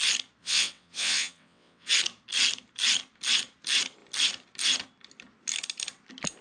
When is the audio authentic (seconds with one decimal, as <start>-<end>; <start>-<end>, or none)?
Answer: 0.0-0.4; 1.9-6.4